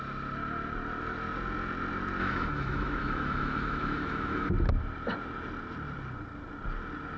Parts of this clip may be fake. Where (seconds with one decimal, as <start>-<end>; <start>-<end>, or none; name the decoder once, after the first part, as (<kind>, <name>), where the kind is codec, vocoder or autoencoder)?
2.2-4.5 (autoencoder, DAC-VAE)